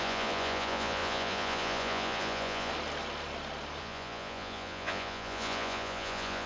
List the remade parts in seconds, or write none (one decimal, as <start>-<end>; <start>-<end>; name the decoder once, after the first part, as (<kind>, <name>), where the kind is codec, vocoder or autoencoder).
0.0-2.7 (vocoder, Vocos); 3.8-6.5